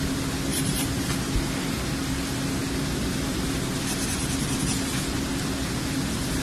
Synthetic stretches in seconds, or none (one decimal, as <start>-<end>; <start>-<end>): 0.5-1.1